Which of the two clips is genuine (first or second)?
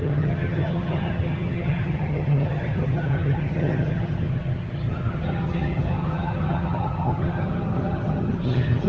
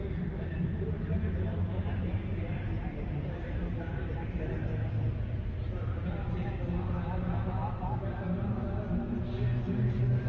second